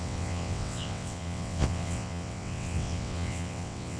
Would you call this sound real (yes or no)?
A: no